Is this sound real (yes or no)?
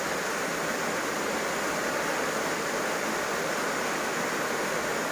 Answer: yes